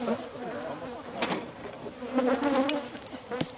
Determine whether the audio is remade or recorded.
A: remade